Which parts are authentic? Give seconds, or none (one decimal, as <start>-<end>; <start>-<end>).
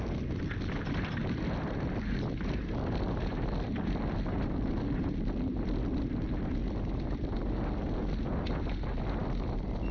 0.0-1.2; 6.1-6.6; 7.4-9.9